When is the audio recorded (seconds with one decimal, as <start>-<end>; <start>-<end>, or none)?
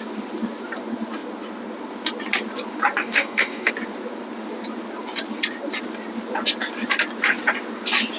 0.0-3.0; 3.7-8.2